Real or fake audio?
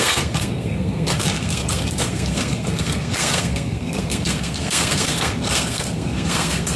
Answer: fake